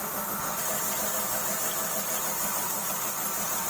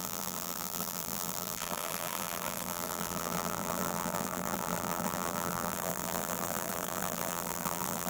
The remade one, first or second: second